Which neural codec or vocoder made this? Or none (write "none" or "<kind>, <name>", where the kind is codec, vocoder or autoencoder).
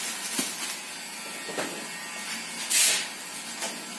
none